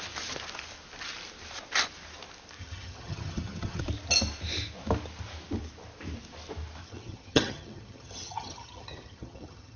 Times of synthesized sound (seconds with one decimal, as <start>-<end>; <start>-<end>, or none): 2.6-3.8; 6.8-9.8